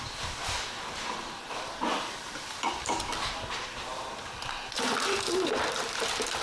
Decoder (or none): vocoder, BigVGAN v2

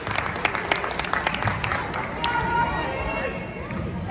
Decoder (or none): none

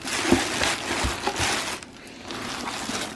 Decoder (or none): none